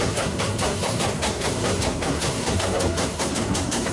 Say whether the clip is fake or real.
fake